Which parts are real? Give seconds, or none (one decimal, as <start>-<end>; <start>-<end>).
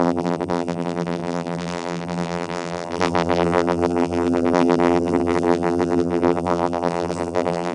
none